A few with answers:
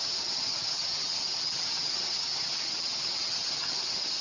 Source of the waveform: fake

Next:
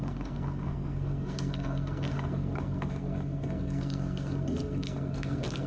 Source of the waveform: fake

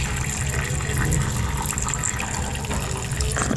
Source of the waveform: real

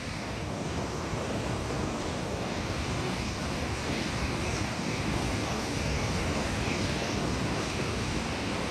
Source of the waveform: fake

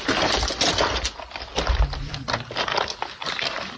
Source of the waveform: real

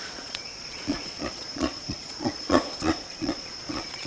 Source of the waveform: fake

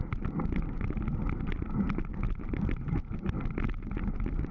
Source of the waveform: real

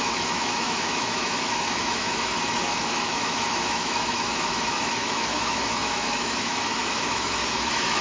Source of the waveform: fake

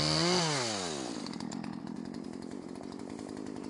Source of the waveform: real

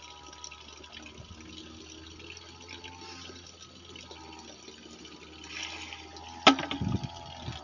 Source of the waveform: real